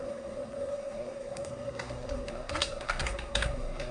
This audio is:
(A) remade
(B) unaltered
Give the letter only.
A